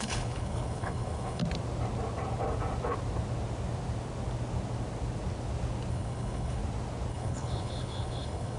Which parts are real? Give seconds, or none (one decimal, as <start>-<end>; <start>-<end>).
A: 1.4-5.9; 6.6-7.1